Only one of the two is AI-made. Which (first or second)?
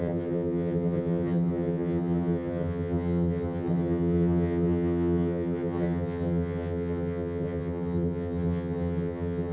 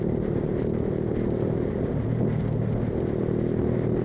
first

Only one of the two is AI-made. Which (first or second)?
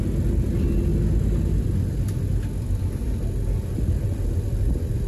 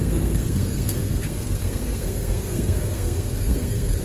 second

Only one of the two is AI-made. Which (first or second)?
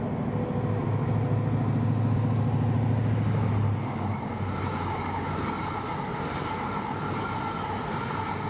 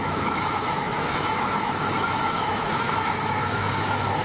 second